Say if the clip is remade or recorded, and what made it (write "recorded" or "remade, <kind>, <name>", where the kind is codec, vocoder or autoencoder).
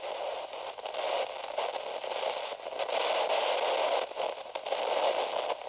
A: recorded